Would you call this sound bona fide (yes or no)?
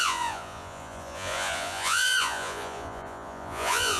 no